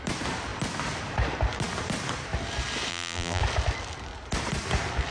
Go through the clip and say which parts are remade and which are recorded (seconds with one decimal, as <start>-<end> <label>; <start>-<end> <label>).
0.0-2.9 recorded; 2.9-3.4 remade; 3.4-5.1 recorded